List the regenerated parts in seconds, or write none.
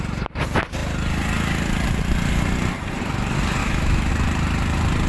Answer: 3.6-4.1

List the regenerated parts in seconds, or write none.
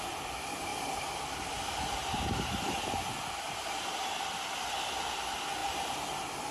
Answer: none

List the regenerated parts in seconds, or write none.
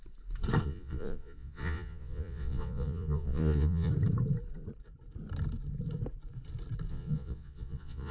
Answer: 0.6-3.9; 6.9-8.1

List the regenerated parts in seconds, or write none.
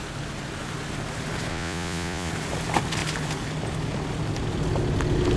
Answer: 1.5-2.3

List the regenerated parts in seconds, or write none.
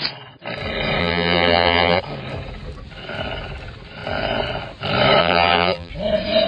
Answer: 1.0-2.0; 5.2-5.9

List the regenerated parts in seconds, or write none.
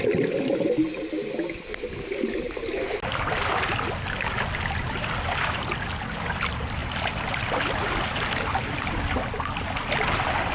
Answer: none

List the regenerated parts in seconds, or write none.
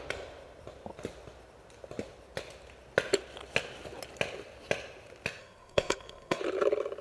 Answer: 5.4-6.4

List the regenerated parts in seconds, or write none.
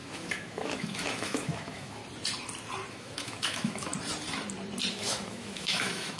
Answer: 0.0-2.0; 2.9-3.9; 4.9-6.2